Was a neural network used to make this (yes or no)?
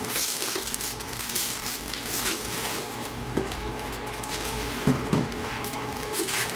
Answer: yes